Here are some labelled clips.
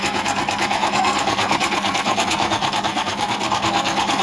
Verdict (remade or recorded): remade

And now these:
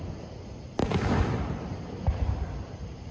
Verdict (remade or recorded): recorded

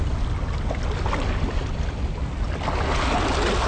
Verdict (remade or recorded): recorded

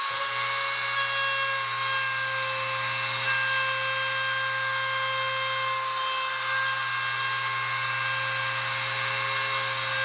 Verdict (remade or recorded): recorded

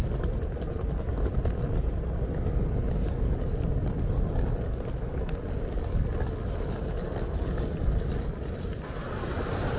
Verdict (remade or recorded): recorded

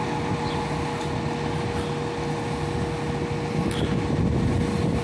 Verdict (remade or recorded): recorded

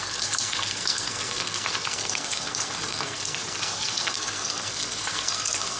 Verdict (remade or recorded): remade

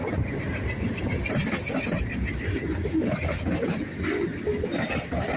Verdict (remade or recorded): recorded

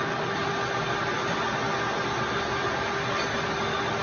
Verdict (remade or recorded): recorded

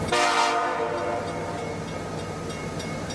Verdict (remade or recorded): recorded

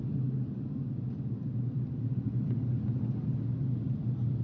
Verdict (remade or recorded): recorded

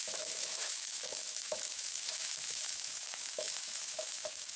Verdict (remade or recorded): remade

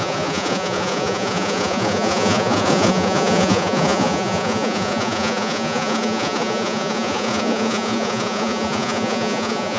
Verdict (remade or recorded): remade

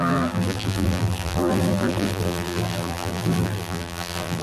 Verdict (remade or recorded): remade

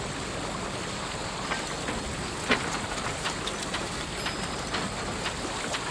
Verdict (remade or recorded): recorded